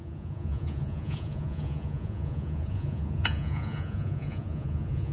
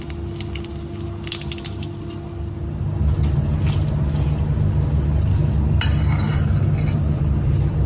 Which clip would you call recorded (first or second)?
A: second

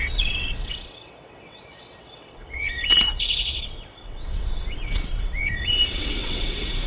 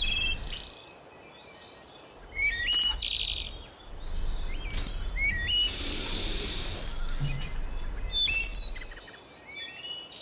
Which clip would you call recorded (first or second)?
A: second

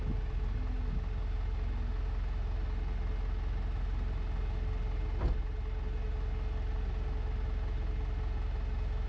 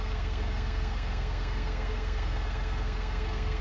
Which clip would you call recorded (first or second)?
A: first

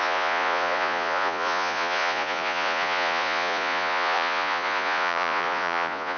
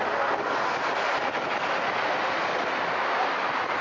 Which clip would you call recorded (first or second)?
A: second